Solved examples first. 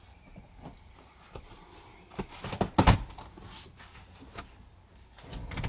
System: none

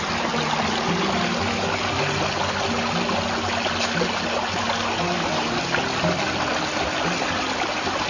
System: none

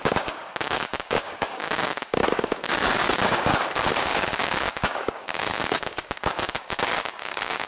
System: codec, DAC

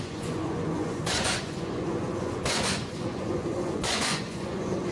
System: vocoder, Vocos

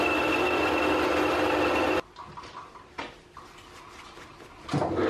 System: none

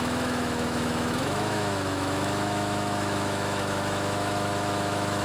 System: autoencoder, DAC-VAE